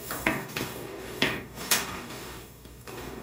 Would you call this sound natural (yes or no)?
no